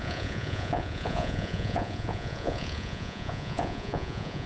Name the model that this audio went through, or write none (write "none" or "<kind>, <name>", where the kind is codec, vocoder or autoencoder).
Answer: vocoder, Vocos